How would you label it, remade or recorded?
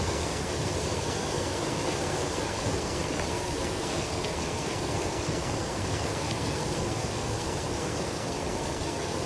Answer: remade